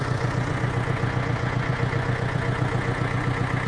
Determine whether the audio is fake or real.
fake